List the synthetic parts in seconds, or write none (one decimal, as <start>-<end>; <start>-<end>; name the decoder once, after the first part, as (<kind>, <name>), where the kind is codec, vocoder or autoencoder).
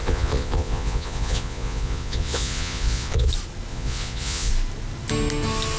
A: 0.0-3.3 (vocoder, Vocos); 3.7-4.5